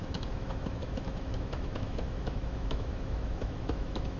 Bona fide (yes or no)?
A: no